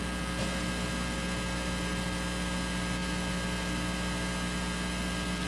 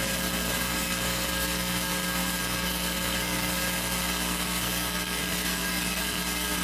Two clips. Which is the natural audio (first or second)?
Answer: first